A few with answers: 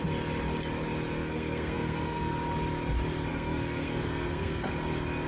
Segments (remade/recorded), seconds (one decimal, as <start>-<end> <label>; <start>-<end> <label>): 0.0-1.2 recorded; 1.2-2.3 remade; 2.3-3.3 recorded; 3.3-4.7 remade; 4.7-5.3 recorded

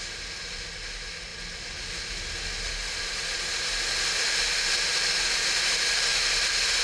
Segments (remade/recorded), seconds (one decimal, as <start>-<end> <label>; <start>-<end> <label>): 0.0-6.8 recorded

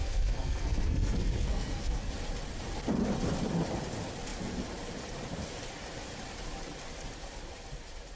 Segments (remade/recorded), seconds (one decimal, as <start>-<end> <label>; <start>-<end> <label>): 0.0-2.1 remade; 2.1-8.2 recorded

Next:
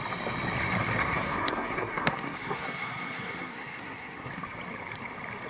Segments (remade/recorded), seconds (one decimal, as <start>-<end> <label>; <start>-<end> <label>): 0.0-1.0 recorded; 1.0-4.3 remade; 4.3-5.5 recorded

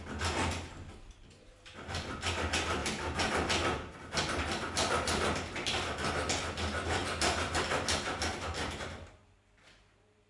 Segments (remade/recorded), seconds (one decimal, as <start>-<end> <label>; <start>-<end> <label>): 0.0-10.3 recorded

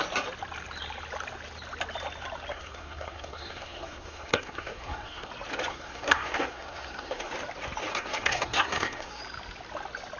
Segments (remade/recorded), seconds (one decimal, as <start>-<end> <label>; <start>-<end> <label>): 0.0-2.5 recorded; 2.5-5.3 remade; 5.3-5.7 recorded; 5.7-7.3 remade; 7.3-7.9 recorded; 7.9-9.2 remade; 9.2-10.2 recorded